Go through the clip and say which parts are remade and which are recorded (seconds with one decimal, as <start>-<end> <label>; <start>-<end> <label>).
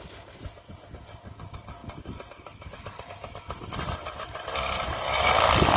0.0-5.8 recorded